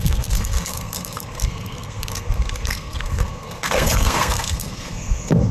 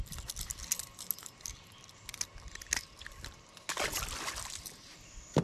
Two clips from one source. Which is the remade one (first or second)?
first